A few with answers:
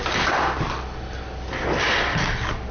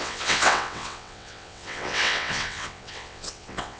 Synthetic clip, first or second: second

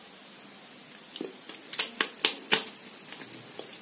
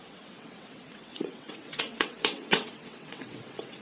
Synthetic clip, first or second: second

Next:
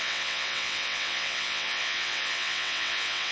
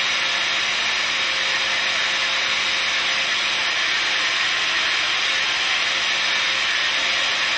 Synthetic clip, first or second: first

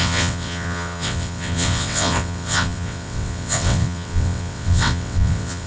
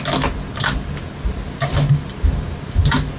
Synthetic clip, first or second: first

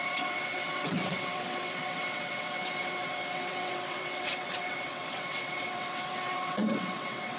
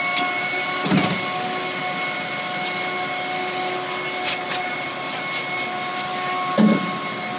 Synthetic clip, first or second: first